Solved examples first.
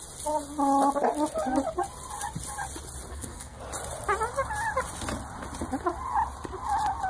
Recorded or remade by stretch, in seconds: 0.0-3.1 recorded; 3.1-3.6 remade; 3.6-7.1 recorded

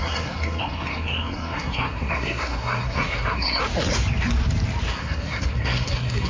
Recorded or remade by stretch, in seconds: 0.0-3.6 remade; 3.6-4.9 recorded; 4.9-6.3 remade

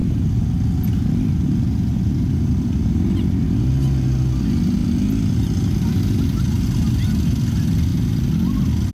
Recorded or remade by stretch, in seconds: 0.0-8.9 recorded

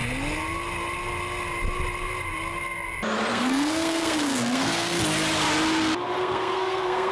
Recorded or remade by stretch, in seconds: 0.0-3.3 recorded; 3.3-5.0 remade; 5.0-6.2 recorded; 6.2-7.1 remade

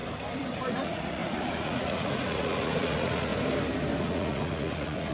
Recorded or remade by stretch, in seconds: 0.0-0.7 recorded; 0.7-3.3 remade; 3.3-4.0 recorded; 4.0-5.1 remade

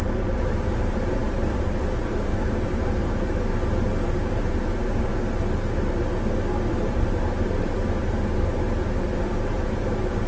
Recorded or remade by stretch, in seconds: 0.0-3.5 remade; 3.5-4.1 recorded; 4.1-5.1 remade; 5.1-6.7 recorded; 6.7-10.3 remade

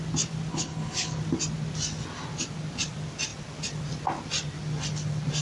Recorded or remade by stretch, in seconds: 0.0-0.5 recorded; 0.5-1.2 remade; 1.2-5.4 recorded

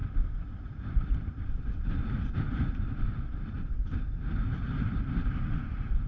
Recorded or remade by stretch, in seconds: 0.0-2.0 remade; 2.0-6.1 recorded